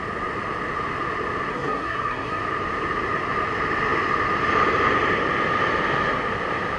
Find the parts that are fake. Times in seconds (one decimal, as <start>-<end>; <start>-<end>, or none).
1.5-2.4